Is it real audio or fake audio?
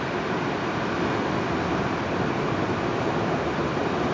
real